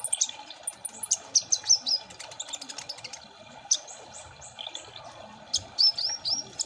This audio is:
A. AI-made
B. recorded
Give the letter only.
B